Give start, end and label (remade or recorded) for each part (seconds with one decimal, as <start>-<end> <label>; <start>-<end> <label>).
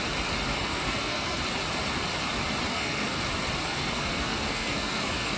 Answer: 0.0-0.5 recorded; 0.5-1.4 remade; 1.4-2.7 recorded; 2.7-3.2 remade; 3.2-3.6 recorded; 3.6-5.4 remade